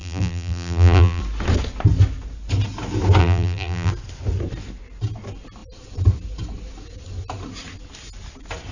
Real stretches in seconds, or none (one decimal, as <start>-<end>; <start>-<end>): 1.2-3.2; 3.9-8.7